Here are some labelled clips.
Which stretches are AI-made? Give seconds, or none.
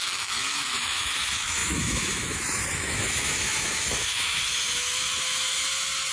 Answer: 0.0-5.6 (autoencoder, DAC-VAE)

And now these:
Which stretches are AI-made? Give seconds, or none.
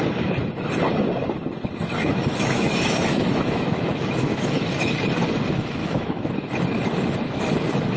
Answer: 2.0-4.7 (autoencoder, DAC-VAE); 5.8-6.3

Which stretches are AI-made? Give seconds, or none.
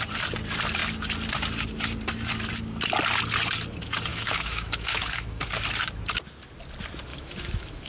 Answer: 4.1-5.5 (autoencoder, DAC-VAE); 7.1-7.9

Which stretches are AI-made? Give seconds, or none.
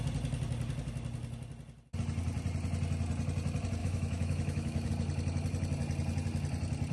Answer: 3.8-4.9 (autoencoder, DAC-VAE)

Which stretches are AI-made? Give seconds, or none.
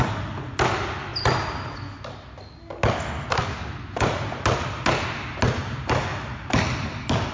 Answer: none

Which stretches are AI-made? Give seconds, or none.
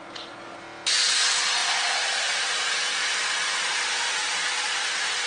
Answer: none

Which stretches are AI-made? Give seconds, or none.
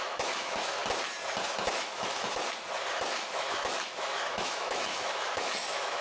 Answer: 0.0-0.8 (autoencoder, DAC-VAE); 1.7-2.4; 2.9-6.0